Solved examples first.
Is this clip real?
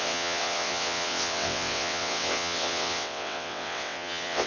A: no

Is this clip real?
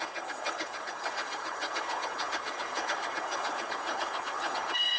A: no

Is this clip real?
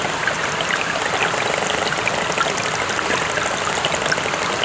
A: yes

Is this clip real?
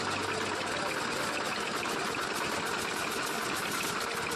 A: yes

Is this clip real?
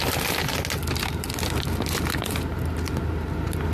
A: yes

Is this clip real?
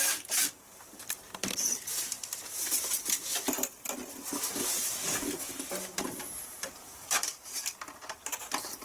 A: no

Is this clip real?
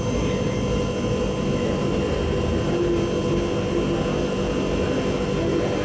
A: yes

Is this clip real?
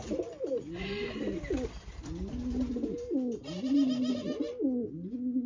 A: yes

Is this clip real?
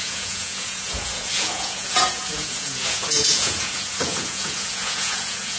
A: no